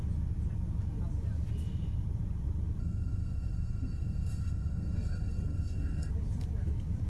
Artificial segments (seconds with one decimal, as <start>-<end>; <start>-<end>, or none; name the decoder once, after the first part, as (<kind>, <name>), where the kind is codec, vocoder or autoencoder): 2.8-6.1 (codec, SNAC)